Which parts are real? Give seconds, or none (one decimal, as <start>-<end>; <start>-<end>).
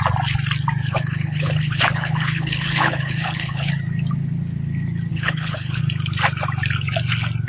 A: 0.0-0.8; 3.7-5.1; 5.8-7.5